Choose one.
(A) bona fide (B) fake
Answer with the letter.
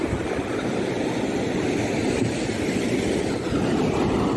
A